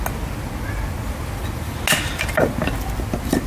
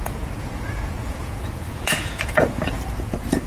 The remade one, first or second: second